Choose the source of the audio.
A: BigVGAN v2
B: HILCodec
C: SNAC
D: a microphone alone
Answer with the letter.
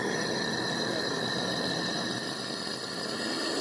D